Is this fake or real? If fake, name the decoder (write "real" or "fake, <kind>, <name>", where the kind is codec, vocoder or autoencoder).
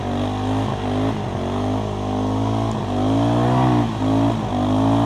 real